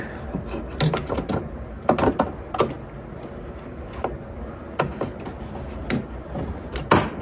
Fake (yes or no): no